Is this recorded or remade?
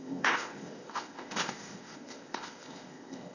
remade